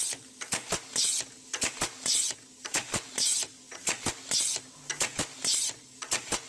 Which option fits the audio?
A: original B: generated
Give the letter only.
A